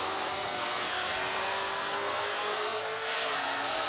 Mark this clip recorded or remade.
remade